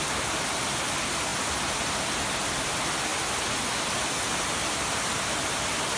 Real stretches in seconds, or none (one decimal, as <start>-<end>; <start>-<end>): 0.0-6.0